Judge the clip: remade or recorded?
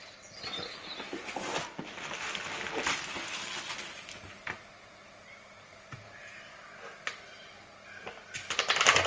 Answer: recorded